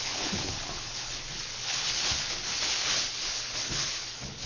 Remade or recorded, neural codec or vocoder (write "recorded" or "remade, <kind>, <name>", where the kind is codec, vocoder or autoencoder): remade, codec, HILCodec